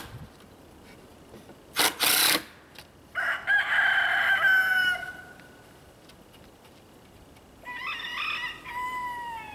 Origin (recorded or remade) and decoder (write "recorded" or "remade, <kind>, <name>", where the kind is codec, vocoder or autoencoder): recorded